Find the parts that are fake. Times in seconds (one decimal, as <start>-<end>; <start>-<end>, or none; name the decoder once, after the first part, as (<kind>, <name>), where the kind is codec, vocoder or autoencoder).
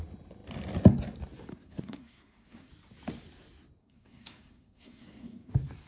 1.5-2.7 (codec, SNAC); 3.8-5.5